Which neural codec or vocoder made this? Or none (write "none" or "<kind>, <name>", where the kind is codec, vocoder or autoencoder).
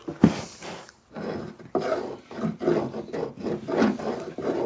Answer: none